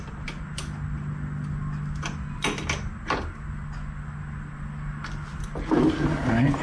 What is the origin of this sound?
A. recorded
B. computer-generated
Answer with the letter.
A